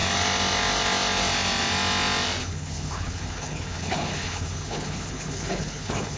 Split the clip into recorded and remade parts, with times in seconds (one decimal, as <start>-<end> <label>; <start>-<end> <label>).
0.0-2.4 recorded; 2.4-6.2 remade

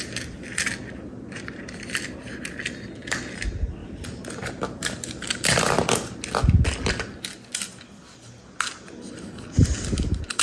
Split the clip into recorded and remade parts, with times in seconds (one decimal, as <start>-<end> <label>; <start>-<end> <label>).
0.0-10.4 recorded

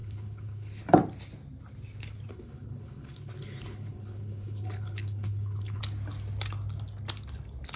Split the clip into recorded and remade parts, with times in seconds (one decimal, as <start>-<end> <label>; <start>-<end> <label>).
0.0-0.8 remade; 0.8-2.3 recorded; 2.3-5.8 remade; 5.8-7.8 recorded

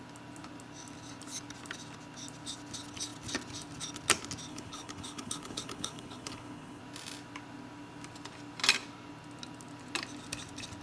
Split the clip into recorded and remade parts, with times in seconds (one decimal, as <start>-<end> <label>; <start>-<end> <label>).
0.0-4.5 recorded; 4.5-6.8 remade; 6.8-10.8 recorded

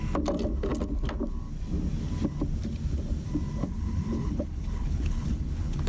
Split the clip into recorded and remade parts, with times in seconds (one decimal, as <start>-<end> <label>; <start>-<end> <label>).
0.0-3.6 recorded; 3.6-5.9 remade

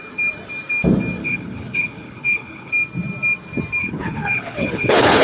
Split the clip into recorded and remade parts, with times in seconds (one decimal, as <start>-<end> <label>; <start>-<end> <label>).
0.0-1.2 recorded; 1.2-2.7 remade; 2.7-3.8 recorded; 3.8-5.2 remade

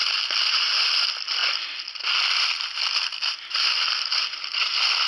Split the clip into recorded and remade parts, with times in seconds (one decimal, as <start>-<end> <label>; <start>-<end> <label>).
0.0-5.1 recorded